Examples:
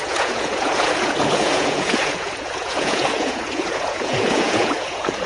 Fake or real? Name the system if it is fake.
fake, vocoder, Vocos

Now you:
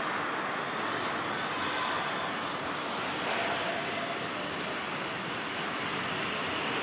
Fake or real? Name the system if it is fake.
real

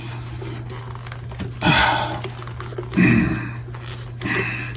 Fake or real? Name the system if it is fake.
real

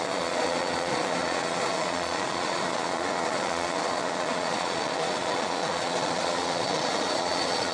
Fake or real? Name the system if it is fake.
fake, vocoder, Vocos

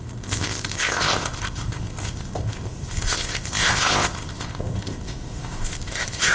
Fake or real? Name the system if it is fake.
fake, codec, ZipCodec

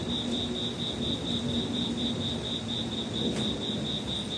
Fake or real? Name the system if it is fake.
real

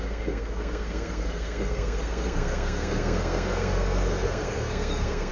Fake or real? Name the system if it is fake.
fake, codec, SNAC